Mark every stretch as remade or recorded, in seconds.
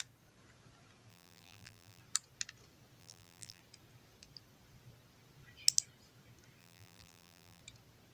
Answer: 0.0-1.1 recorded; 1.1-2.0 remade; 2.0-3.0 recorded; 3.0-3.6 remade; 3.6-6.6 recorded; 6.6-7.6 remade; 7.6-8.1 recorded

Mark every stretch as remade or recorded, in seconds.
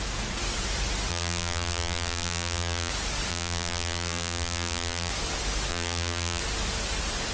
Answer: 0.0-1.1 recorded; 1.1-2.9 remade; 2.9-3.3 recorded; 3.3-5.1 remade; 5.1-5.7 recorded; 5.7-6.4 remade; 6.4-7.3 recorded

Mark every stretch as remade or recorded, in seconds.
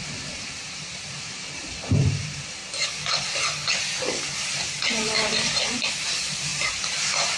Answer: 0.0-2.6 remade; 2.6-5.9 recorded; 5.9-6.5 remade; 6.5-7.4 recorded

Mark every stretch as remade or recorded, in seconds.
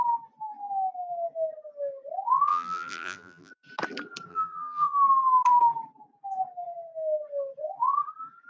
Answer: 0.0-2.5 recorded; 2.5-3.5 remade; 3.5-4.3 recorded; 4.3-5.0 remade; 5.0-8.5 recorded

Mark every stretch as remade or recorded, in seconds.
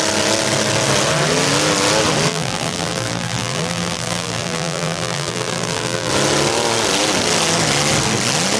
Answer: 0.0-2.3 recorded; 2.3-6.1 remade; 6.1-8.6 recorded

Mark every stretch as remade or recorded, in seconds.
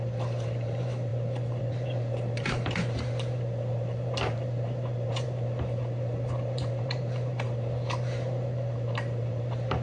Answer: 0.0-9.8 remade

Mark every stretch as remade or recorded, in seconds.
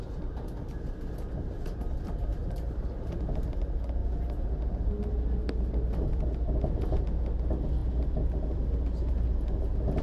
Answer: 0.0-2.4 recorded; 2.4-2.9 remade; 2.9-4.0 recorded; 4.0-4.6 remade; 4.6-10.0 recorded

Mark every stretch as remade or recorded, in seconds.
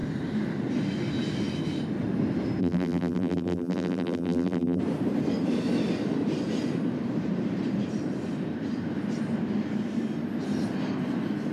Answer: 0.0-2.6 recorded; 2.6-4.8 remade; 4.8-11.5 recorded